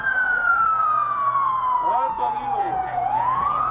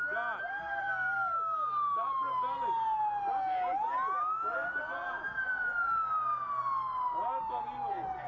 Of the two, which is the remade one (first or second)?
first